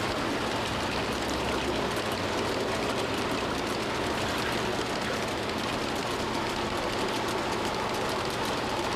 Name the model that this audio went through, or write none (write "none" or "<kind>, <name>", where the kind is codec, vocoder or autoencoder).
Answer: none